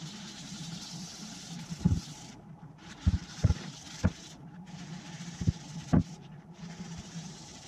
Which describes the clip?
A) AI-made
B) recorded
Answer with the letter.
A